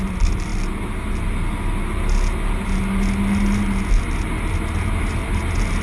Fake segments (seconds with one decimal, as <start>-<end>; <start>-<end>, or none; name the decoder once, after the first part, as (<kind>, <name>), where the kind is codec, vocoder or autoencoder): none